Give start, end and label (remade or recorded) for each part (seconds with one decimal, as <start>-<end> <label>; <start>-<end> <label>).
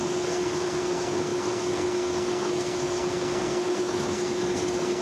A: 0.0-5.0 remade